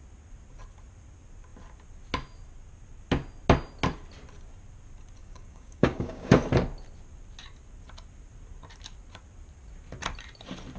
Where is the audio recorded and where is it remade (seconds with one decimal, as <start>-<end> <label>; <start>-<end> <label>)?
0.0-5.2 recorded; 5.2-6.3 remade; 6.3-10.8 recorded